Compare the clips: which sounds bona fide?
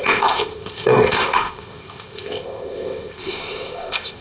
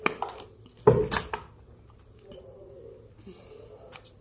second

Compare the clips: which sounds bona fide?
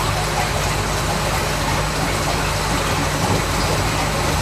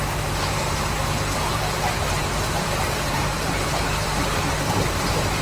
first